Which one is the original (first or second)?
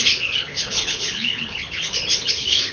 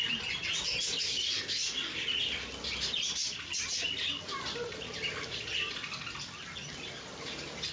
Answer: second